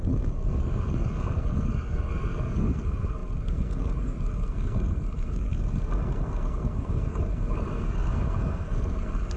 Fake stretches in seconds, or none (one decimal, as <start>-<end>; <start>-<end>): 0.0-9.4